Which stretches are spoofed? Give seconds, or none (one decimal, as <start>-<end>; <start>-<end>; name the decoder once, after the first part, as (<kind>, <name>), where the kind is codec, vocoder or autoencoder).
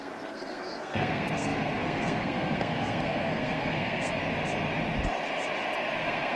0.0-4.2 (codec, SNAC); 6.0-6.4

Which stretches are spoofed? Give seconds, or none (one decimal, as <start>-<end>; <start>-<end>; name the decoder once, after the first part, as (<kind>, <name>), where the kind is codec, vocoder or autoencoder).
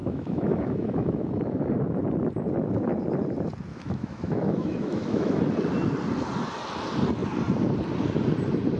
0.0-1.6 (autoencoder, DAC-VAE); 3.7-5.4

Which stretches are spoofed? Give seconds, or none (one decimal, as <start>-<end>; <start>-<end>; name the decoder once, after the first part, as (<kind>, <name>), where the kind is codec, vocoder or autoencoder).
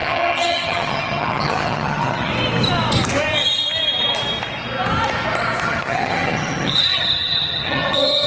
0.0-2.3 (vocoder, HiFi-GAN); 5.6-8.3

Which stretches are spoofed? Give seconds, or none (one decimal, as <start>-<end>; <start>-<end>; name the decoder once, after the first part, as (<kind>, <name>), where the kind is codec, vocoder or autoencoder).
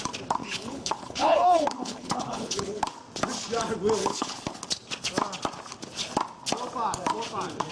0.4-2.8 (codec, HILCodec); 4.0-4.6